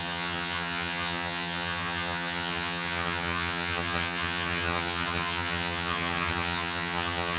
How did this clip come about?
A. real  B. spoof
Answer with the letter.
B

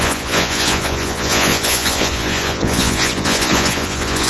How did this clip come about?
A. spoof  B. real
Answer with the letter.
A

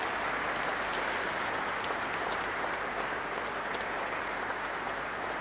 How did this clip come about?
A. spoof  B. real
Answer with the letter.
B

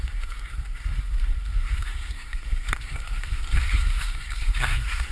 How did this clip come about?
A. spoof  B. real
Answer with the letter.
A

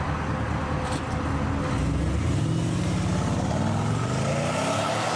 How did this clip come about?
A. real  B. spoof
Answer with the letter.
A